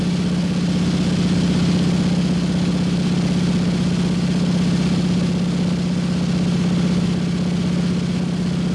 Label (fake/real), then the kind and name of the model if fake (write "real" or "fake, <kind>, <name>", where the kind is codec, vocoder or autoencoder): real